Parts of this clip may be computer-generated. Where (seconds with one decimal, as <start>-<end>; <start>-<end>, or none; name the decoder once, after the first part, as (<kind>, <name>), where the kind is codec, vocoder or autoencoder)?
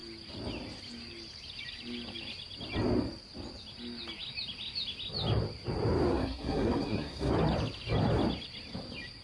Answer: 6.1-7.3 (codec, SNAC)